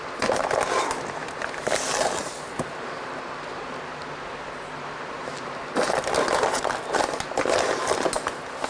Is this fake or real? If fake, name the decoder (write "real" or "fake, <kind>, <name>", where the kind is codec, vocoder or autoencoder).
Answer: real